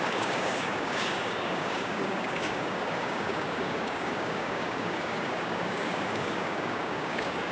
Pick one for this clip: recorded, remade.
remade